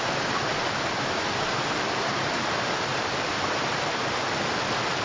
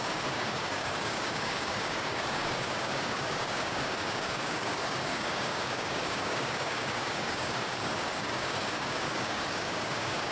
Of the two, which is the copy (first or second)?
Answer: second